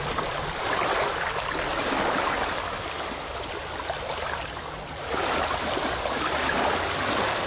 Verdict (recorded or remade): recorded